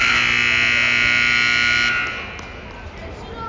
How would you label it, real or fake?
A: real